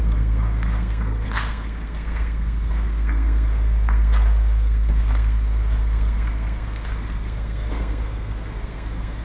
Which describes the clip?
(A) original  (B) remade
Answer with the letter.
B